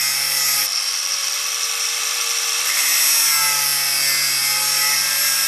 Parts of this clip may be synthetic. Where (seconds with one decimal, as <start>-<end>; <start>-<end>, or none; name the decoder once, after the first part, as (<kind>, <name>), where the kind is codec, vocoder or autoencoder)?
0.7-3.1 (vocoder, BigVGAN v2)